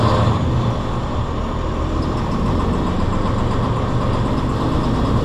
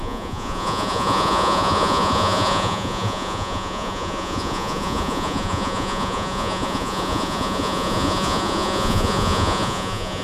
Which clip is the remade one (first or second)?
second